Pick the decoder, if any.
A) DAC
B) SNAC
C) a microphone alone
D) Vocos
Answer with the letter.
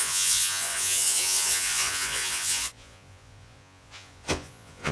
D